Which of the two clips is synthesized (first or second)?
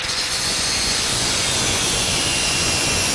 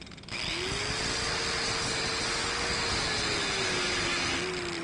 first